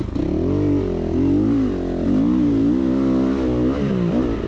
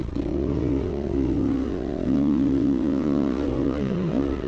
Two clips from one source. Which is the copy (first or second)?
second